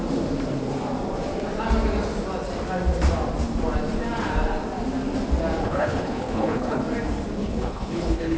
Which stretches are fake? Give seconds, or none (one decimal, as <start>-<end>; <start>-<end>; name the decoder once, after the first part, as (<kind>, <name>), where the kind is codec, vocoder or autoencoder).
5.6-6.8 (codec, HILCodec); 7.4-8.4